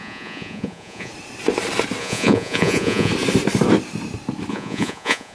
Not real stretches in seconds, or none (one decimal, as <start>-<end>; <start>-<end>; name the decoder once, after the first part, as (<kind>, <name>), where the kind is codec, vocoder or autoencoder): 0.0-1.1 (vocoder, Vocos); 2.0-3.1; 4.5-5.3